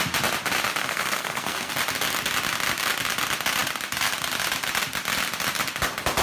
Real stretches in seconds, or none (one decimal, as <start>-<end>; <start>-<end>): 0.0-0.8; 1.7-6.2